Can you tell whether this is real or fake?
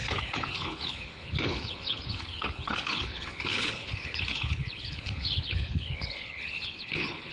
fake